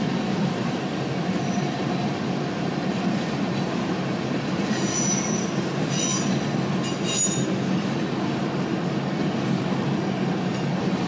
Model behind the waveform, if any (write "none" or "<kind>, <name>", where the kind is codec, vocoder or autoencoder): none